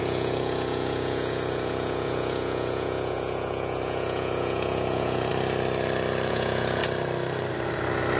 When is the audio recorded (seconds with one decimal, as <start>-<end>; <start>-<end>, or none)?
5.3-6.3; 6.8-8.2